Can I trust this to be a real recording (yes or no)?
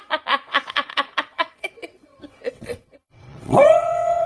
no